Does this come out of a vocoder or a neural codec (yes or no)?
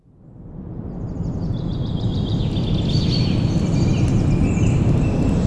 no